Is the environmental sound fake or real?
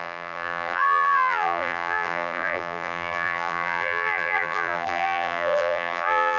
fake